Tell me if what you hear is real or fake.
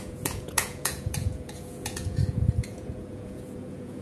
fake